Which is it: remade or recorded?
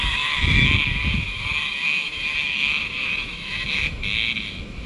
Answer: remade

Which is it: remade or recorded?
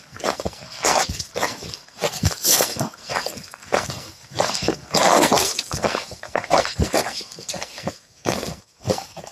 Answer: remade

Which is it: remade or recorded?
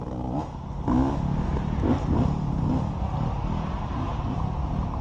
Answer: recorded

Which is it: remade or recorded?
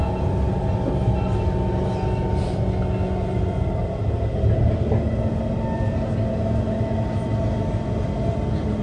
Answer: recorded